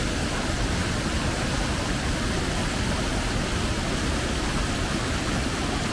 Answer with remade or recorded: recorded